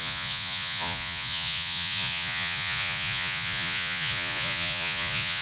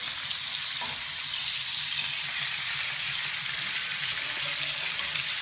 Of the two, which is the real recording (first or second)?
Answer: second